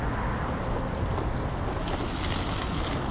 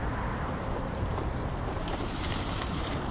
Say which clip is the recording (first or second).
first